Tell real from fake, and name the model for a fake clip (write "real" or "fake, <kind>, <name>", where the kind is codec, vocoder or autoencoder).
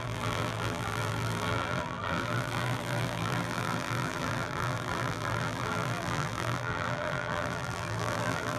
fake, vocoder, BigVGAN v2